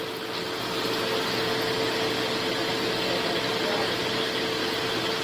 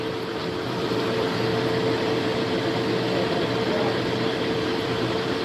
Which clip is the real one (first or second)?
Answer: first